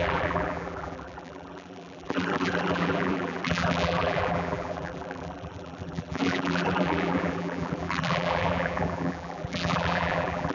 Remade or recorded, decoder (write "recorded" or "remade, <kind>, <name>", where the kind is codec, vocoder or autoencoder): remade, vocoder, BigVGAN v2